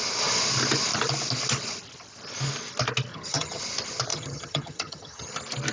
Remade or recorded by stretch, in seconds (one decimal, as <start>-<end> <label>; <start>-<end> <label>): 0.0-3.1 recorded; 3.1-3.6 remade; 3.6-4.1 recorded; 4.1-5.3 remade; 5.3-5.7 recorded